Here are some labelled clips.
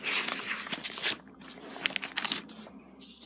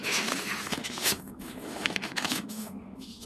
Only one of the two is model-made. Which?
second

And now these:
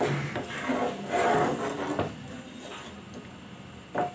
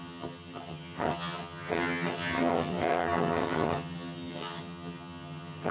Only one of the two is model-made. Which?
second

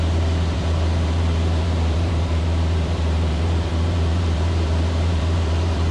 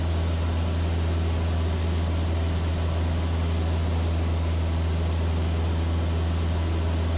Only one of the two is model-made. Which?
first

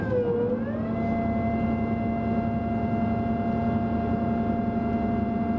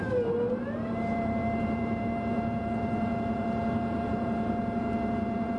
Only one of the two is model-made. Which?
second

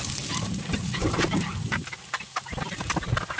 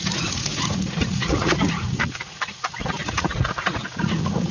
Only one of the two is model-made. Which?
second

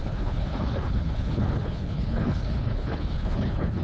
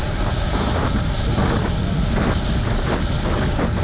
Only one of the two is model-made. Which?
first